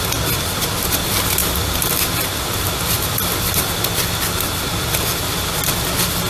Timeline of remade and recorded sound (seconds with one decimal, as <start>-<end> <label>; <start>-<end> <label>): 0.0-1.4 recorded; 1.4-4.0 remade; 4.0-6.3 recorded